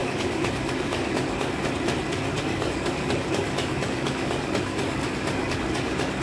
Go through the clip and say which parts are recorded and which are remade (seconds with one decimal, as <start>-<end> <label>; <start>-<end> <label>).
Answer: 0.0-1.7 remade; 1.7-2.3 recorded; 2.3-6.2 remade